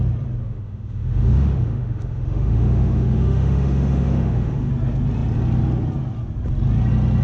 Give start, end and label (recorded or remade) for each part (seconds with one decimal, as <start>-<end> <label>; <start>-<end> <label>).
0.0-0.4 recorded; 0.4-4.7 remade; 4.7-7.2 recorded